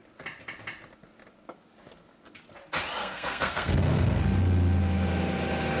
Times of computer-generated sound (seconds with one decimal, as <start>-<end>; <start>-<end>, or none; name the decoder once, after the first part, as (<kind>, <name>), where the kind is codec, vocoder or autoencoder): 3.0-4.2 (codec, SNAC)